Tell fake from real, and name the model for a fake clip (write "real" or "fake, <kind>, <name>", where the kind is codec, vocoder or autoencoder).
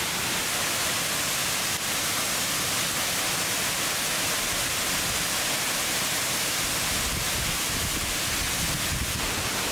real